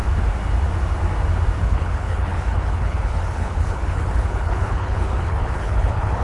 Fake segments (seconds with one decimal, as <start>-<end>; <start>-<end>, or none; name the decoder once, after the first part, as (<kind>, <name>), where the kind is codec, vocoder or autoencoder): 1.6-6.2 (codec, HILCodec)